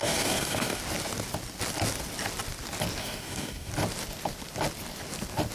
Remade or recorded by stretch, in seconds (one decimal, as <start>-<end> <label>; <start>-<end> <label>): 0.0-0.8 remade; 0.8-3.0 recorded; 3.0-3.7 remade; 3.7-5.5 recorded